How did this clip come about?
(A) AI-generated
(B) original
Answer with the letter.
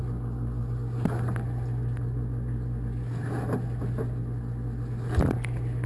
B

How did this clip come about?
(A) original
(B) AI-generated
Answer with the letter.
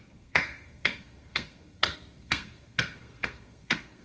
B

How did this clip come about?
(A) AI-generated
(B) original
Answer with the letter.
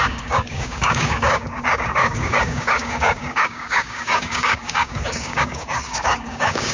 A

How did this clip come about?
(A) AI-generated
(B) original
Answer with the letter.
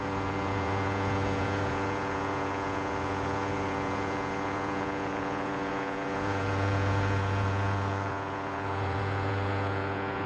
A